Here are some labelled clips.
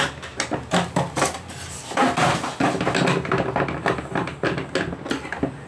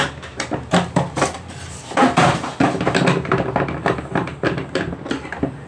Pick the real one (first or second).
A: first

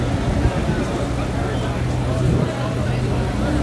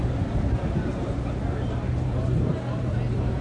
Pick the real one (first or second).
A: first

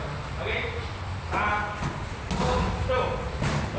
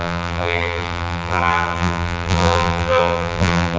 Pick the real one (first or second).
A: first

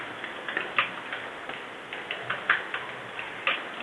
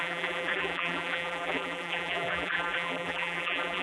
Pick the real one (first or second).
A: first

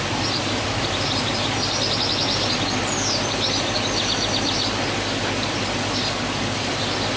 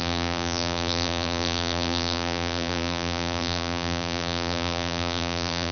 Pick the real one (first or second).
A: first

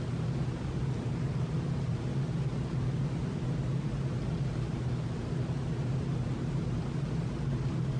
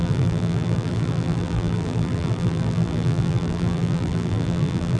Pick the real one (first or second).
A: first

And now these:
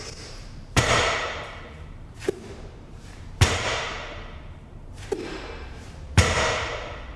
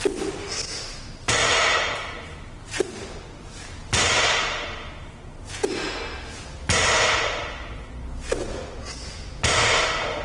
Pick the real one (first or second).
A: second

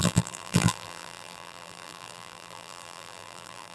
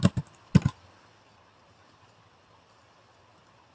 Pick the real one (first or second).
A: second